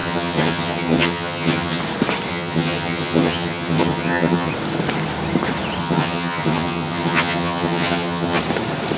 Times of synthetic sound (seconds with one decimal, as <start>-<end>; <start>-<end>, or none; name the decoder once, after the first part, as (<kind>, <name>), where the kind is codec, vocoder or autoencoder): 0.0-1.8 (vocoder, HiFi-GAN); 2.3-4.5; 5.8-8.4